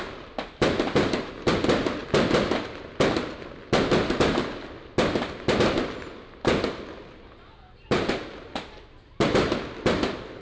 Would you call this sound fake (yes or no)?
no